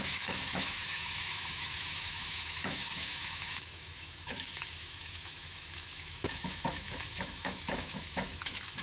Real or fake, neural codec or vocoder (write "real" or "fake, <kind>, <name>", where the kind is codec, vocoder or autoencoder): fake, autoencoder, DAC-VAE